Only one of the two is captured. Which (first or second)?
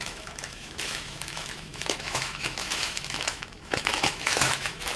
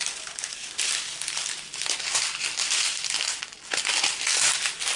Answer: second